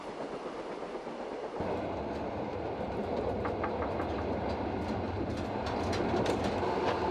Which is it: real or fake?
real